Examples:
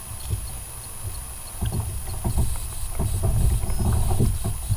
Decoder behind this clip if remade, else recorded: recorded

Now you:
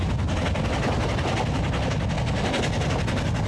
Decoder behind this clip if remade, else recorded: recorded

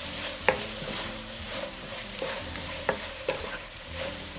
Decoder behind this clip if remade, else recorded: remade, vocoder, BigVGAN v2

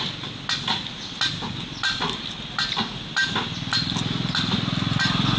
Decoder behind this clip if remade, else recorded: recorded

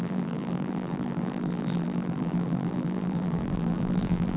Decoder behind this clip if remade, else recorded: remade, vocoder, BigVGAN v2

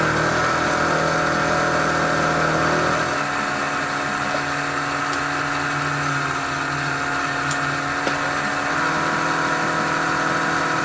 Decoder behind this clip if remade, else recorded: recorded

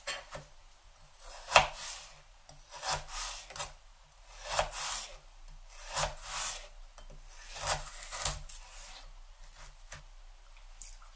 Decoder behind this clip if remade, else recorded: recorded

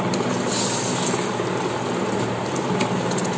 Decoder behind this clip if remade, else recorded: recorded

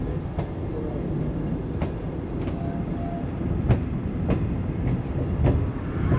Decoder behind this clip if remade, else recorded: recorded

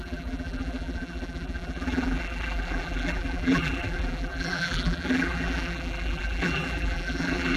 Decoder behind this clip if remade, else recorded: remade, vocoder, BigVGAN v2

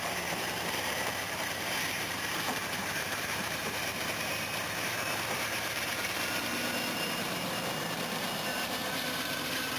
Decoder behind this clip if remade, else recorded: remade, vocoder, BigVGAN v2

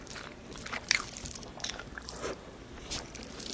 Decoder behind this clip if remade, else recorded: remade, vocoder, BigVGAN v2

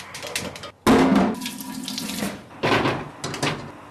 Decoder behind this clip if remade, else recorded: recorded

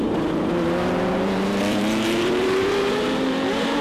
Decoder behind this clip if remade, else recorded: remade, vocoder, BigVGAN v2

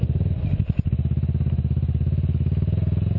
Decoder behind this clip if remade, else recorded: recorded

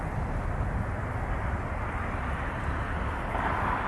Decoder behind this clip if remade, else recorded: recorded